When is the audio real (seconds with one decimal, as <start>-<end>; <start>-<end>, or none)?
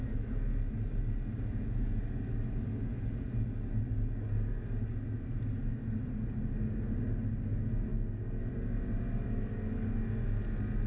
0.0-1.5; 2.0-2.7; 3.5-10.9